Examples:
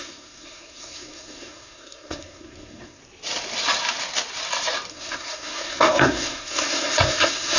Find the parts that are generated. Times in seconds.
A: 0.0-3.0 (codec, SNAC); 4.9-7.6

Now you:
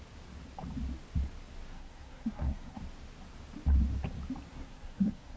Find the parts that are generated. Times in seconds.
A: 1.7-2.8 (codec, SNAC); 4.5-5.4

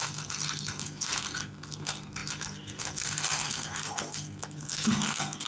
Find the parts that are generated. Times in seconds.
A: 0.0-5.5 (codec, SNAC)

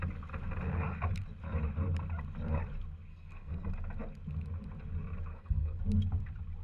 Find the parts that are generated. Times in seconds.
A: 3.1-3.7 (codec, SNAC); 5.3-5.8

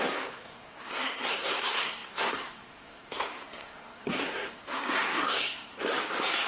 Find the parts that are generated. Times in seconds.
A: 0.0-5.7 (codec, SNAC)

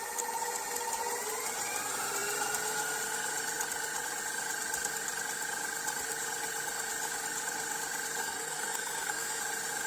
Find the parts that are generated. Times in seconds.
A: 8.2-9.4 (codec, SNAC)

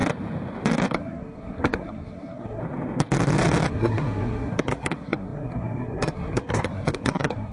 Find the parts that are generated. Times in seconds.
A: 0.9-2.6 (codec, SNAC); 3.7-7.5

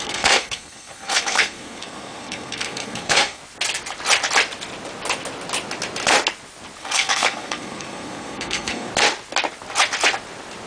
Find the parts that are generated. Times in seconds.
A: 0.0-3.4 (codec, SNAC); 6.8-8.9